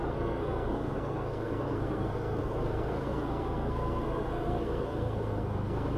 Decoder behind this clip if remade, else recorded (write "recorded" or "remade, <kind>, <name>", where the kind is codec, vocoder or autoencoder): remade, codec, SNAC